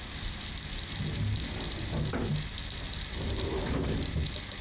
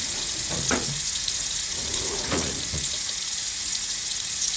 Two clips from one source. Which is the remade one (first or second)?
second